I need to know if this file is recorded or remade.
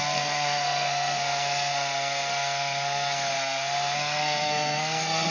remade